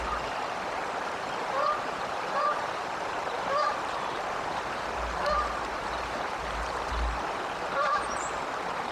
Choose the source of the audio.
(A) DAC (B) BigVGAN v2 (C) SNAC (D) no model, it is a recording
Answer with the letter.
B